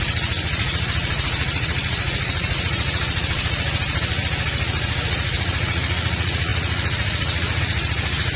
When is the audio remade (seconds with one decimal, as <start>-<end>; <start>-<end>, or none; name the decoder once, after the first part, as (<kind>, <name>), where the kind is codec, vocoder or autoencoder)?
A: 0.0-8.4 (vocoder, Vocos)